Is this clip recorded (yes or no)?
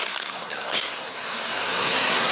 no